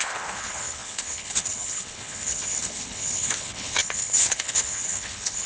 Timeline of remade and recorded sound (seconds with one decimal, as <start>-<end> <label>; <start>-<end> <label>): 0.0-5.5 remade